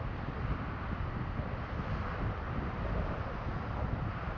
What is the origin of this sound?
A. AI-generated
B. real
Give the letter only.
B